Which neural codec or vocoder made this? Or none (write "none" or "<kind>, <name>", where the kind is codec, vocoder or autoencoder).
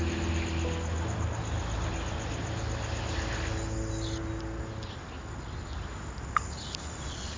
none